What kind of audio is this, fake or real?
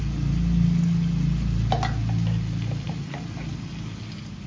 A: real